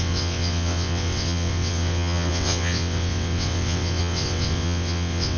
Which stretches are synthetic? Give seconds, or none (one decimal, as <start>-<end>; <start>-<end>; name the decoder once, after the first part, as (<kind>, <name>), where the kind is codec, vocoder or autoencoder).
0.0-5.4 (vocoder, WaveNeXt)